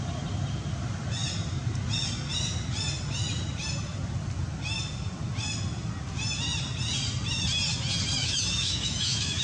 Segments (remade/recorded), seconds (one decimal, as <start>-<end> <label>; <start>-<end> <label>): 0.0-8.2 recorded; 8.2-9.4 remade